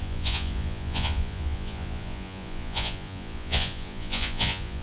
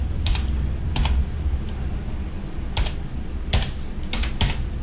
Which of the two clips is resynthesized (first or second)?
first